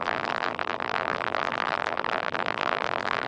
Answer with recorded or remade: remade